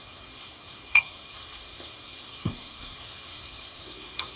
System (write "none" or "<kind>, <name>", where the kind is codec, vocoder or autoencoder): codec, SNAC